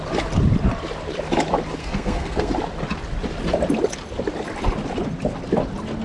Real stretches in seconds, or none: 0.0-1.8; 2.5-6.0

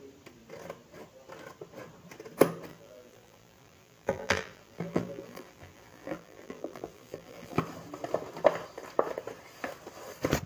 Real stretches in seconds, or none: 0.0-2.7; 7.6-10.5

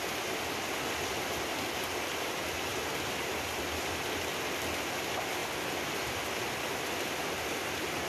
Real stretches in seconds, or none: 0.0-2.7; 3.6-8.1

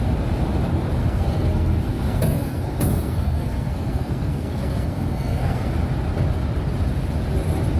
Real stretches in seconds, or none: 0.0-1.0; 5.7-7.8

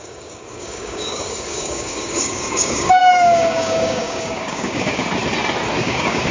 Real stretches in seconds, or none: 5.0-5.8